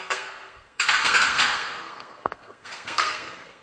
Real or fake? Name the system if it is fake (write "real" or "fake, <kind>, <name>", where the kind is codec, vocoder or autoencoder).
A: fake, codec, SNAC